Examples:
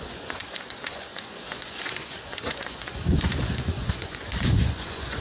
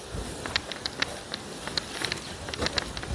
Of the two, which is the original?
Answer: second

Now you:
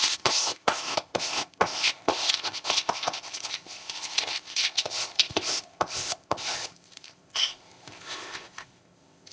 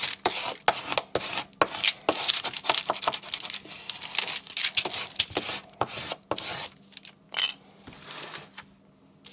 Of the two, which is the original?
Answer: second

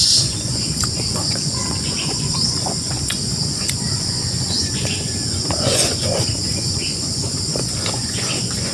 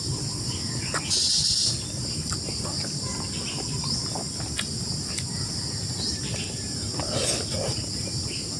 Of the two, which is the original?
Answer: second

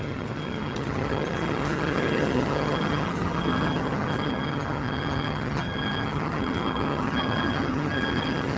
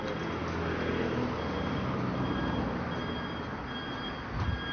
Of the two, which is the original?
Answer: second